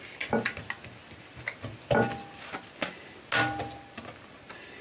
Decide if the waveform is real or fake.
real